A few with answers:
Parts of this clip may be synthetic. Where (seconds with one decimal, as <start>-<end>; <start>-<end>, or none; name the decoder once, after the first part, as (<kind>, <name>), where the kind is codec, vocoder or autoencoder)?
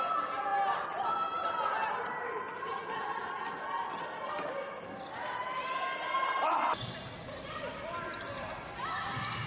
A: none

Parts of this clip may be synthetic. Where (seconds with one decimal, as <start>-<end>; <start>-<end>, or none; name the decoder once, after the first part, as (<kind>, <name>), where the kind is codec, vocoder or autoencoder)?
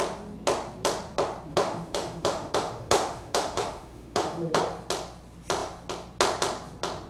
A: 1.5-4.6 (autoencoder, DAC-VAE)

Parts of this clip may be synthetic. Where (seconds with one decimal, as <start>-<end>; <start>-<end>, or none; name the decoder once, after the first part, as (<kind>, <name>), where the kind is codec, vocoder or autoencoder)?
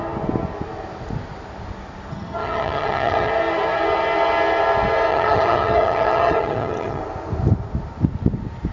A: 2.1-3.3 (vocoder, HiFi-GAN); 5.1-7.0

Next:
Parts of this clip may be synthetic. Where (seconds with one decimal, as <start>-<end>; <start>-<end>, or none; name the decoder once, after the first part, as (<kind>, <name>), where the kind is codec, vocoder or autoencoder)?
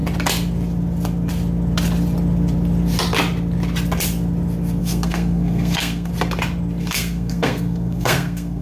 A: 4.8-6.1 (codec, SNAC); 6.8-8.6